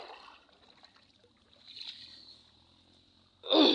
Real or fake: real